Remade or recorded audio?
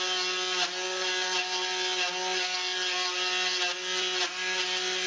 recorded